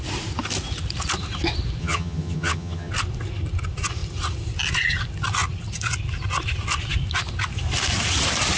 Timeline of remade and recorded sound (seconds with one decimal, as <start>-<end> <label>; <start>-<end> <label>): 0.0-1.8 recorded; 1.8-2.9 remade; 2.9-8.6 recorded